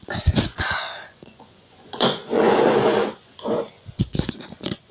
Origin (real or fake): fake